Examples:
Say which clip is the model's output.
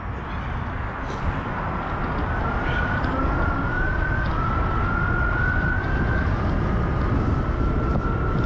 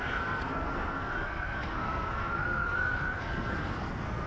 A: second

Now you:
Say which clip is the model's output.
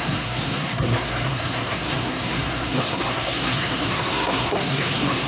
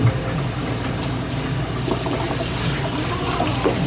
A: first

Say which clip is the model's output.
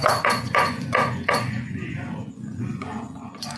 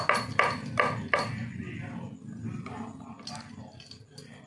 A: first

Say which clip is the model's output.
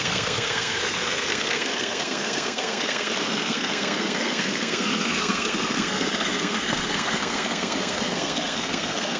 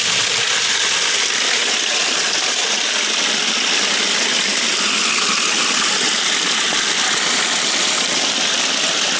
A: first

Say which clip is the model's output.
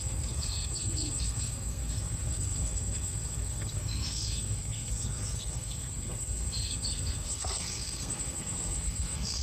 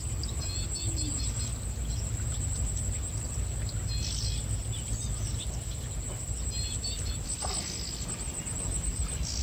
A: first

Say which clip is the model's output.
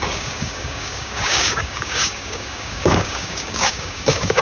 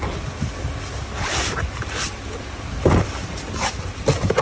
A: first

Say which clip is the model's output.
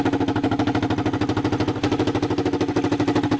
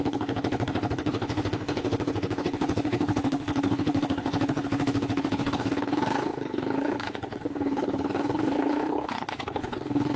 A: second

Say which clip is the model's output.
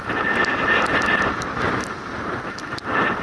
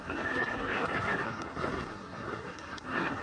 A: second